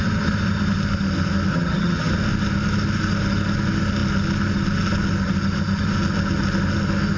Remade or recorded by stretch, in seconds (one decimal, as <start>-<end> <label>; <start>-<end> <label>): 0.0-1.5 recorded; 1.5-2.1 remade; 2.1-7.2 recorded